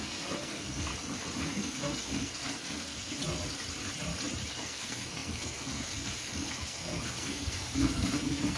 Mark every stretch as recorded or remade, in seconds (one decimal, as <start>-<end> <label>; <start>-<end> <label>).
0.0-0.9 remade; 0.9-1.4 recorded; 1.4-3.2 remade; 3.2-4.5 recorded; 4.5-8.6 remade